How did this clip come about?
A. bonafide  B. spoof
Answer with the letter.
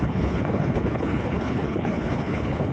B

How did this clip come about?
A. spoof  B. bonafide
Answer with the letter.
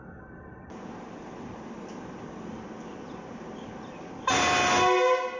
B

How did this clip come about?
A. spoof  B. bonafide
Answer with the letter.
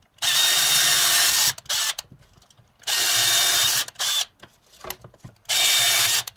B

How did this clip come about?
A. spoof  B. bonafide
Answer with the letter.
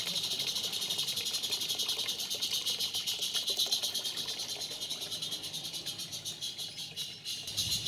B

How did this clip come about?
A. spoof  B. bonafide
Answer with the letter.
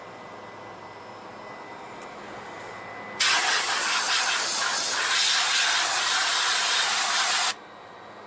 B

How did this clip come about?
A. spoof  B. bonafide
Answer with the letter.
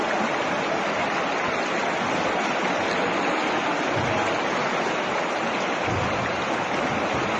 B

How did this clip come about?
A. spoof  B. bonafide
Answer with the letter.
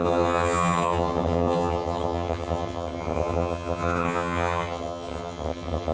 A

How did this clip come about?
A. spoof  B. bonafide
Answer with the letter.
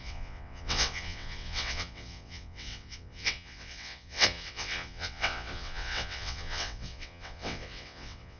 A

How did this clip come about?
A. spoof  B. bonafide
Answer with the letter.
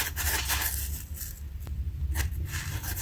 B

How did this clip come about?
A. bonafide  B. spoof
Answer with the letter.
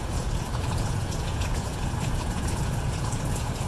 B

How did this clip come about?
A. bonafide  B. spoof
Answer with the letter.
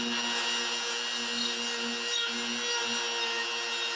A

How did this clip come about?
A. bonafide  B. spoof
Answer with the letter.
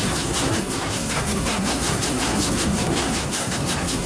B